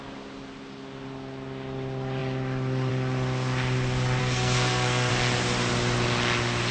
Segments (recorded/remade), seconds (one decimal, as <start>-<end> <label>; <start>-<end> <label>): 0.0-4.2 recorded; 4.2-5.1 remade; 5.1-6.7 recorded

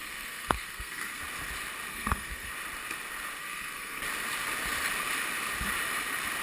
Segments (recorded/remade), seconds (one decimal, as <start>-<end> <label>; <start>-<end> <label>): 0.0-1.2 remade; 1.2-1.9 recorded; 1.9-2.5 remade; 2.5-3.4 recorded; 3.4-4.0 remade; 4.0-6.4 recorded

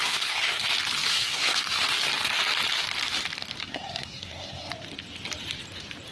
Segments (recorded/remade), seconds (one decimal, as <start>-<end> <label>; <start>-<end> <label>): 0.0-0.6 remade; 0.6-1.1 recorded; 1.1-1.9 remade; 1.9-3.6 recorded; 3.6-4.7 remade; 4.7-6.1 recorded

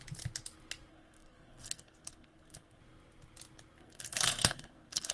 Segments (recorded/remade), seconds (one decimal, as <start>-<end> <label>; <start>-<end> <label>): 0.0-0.9 recorded; 0.9-2.8 remade; 2.8-3.8 recorded; 3.8-5.1 remade

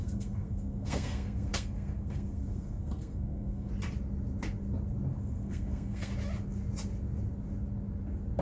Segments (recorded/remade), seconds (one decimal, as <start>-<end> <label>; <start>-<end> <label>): 0.0-3.7 remade; 3.7-5.2 recorded; 5.2-6.1 remade; 6.1-8.4 recorded

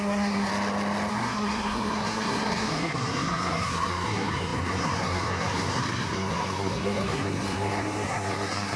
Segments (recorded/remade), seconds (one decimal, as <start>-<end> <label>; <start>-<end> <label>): 0.0-0.5 remade; 0.5-1.1 recorded; 1.1-8.8 remade

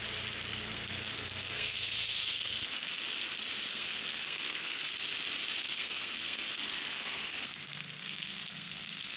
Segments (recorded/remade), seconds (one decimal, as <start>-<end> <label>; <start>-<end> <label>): 0.0-0.5 recorded; 0.5-3.0 remade; 3.0-3.7 recorded; 3.7-4.9 remade; 4.9-5.6 recorded; 5.6-9.2 remade